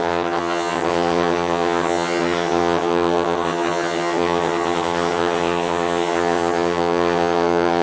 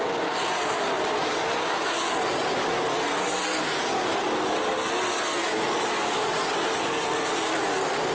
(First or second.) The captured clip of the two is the second